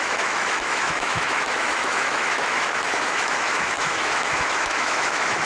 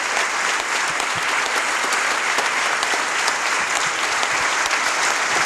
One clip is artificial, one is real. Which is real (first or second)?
second